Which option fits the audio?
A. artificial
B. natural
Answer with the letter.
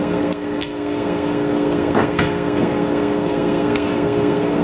A